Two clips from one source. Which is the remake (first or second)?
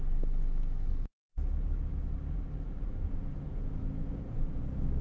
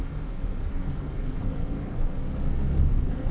second